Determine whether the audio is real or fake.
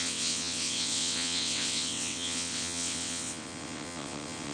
fake